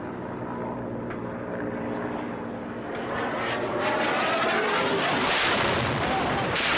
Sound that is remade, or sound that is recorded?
remade